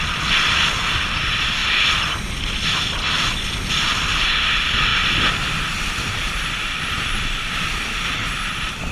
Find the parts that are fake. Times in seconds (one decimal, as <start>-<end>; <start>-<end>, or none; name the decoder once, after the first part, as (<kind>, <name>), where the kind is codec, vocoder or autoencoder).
1.6-3.2 (vocoder, BigVGAN v2); 4.9-7.4